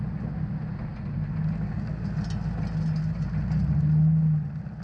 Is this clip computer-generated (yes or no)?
no